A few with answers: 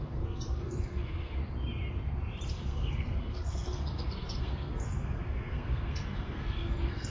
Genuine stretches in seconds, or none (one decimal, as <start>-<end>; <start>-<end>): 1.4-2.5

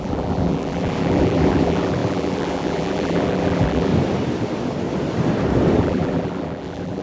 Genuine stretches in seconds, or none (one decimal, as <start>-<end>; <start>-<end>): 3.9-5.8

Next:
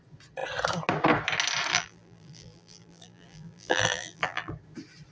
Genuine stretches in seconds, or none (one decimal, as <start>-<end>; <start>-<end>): 0.0-1.7; 4.5-5.1